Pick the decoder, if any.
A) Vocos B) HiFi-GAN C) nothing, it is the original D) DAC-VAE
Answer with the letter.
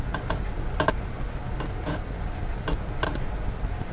C